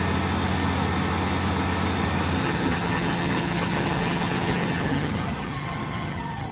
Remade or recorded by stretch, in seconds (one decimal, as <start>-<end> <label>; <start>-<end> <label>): 0.0-2.4 recorded; 2.4-6.5 remade